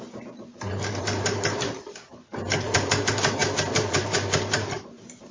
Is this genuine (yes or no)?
no